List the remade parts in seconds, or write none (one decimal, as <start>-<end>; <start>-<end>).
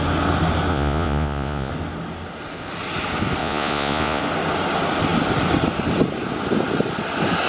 0.7-1.7; 3.4-4.2